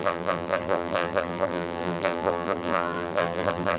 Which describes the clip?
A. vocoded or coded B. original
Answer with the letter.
A